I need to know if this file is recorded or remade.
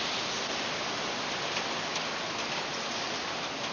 recorded